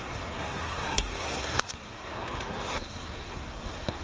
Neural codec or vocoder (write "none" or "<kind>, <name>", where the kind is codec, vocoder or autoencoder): codec, SNAC